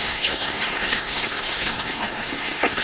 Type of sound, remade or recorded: remade